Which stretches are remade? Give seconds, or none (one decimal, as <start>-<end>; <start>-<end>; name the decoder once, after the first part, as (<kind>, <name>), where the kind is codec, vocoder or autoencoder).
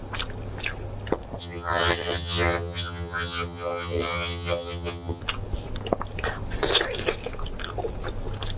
1.4-5.2 (vocoder, HiFi-GAN)